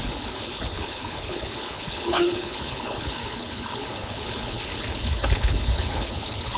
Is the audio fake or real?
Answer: fake